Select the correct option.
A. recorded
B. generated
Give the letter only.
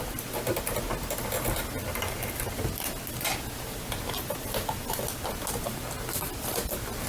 A